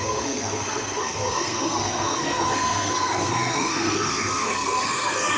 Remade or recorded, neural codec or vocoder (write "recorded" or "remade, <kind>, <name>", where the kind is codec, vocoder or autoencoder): remade, codec, SNAC